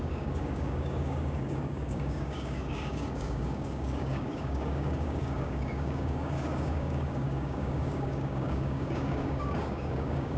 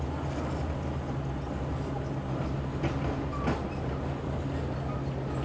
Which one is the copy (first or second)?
first